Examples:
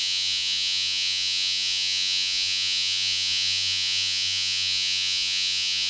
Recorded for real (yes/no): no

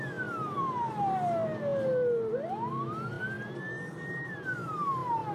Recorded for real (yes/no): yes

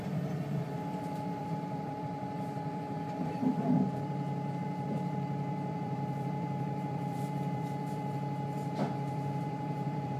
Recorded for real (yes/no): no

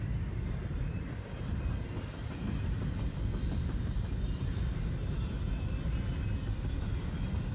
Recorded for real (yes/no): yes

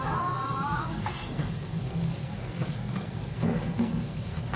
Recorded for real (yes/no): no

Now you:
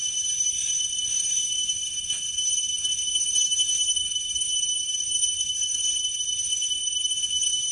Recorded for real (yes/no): no